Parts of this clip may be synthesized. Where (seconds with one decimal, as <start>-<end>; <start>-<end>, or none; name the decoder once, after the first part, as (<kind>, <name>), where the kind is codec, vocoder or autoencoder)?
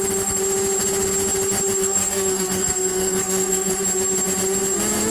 1.8-3.7 (codec, SNAC)